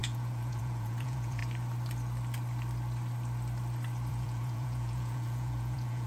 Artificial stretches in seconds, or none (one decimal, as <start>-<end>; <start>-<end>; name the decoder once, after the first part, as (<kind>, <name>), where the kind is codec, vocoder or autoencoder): 0.0-1.4 (vocoder, Vocos); 4.1-6.1